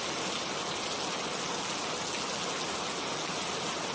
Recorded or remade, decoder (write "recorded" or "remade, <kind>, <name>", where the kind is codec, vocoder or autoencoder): recorded